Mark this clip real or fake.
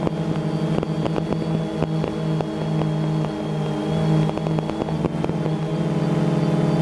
real